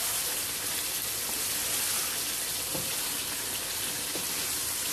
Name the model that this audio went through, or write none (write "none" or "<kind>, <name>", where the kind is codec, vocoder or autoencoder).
none